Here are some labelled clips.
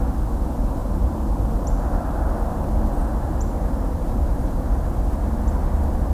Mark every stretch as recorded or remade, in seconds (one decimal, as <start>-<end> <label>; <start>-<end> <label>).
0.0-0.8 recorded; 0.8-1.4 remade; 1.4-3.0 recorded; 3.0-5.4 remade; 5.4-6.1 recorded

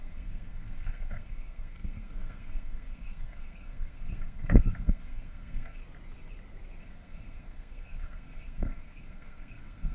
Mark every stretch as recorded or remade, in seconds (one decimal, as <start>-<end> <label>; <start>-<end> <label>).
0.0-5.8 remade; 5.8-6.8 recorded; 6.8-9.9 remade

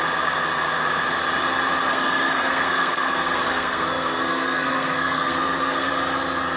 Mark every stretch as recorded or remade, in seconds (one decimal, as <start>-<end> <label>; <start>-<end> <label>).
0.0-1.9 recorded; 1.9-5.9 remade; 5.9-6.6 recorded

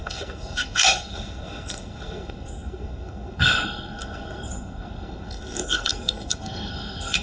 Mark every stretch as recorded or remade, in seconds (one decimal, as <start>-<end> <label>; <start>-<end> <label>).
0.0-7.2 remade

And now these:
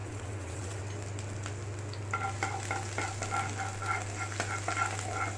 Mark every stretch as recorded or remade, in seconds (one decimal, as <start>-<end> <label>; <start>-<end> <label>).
0.0-0.8 remade; 0.8-5.4 recorded